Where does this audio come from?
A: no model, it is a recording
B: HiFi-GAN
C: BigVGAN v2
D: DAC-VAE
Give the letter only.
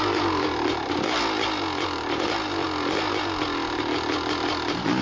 A